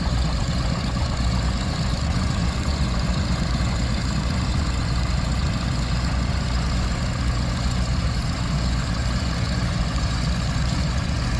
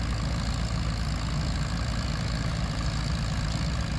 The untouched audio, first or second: second